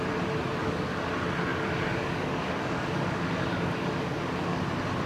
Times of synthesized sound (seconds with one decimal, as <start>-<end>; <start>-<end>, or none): 0.6-1.1; 1.5-4.6